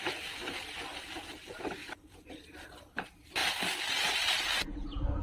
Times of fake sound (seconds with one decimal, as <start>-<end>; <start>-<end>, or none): 0.4-1.0; 1.8-2.5